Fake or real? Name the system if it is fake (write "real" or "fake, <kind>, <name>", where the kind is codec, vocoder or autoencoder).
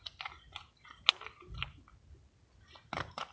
real